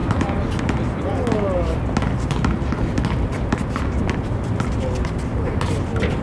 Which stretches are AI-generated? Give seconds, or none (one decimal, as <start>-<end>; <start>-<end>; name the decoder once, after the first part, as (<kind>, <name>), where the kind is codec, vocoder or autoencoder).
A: none